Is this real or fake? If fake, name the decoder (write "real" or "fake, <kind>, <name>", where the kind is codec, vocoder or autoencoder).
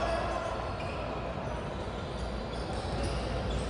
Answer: real